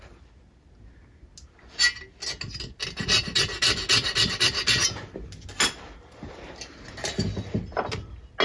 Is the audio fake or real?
real